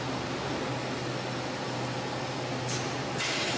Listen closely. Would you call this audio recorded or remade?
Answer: recorded